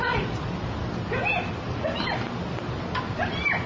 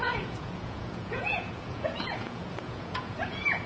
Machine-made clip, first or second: second